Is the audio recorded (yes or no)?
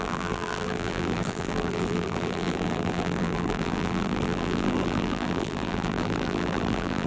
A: no